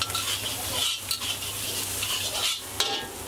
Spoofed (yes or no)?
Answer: no